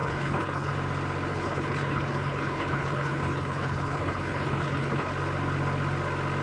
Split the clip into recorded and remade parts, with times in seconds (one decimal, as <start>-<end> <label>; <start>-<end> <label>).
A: 0.0-0.7 remade; 0.7-1.3 recorded; 1.3-5.1 remade; 5.1-6.4 recorded